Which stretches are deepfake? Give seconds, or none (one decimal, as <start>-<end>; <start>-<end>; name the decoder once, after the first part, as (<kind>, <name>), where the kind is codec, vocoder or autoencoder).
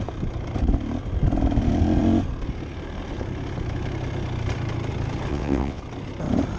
5.3-5.8 (vocoder, WaveNeXt)